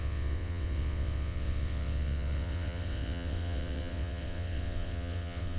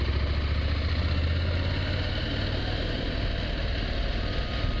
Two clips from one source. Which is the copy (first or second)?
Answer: first